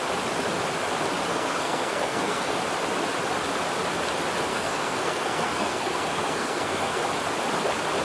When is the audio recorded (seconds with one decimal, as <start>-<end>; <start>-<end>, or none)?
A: 0.0-1.3; 2.6-4.5; 7.0-8.0